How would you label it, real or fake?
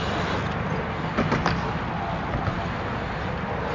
real